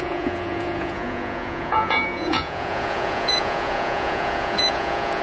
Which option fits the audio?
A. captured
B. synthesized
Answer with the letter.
B